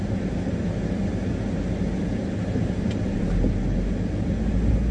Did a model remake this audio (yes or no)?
no